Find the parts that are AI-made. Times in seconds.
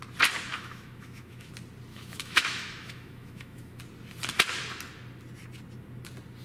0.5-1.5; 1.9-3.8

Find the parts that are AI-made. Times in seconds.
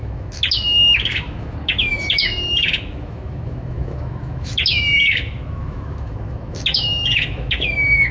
0.0-8.1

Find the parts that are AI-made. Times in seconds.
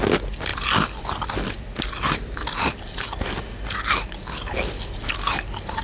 none